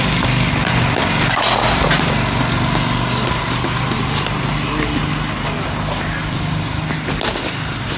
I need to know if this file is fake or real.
real